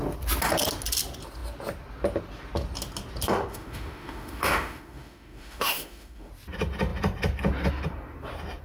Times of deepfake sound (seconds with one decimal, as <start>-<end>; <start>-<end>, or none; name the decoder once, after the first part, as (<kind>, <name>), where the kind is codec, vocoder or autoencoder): 3.5-6.3 (autoencoder, DAC-VAE)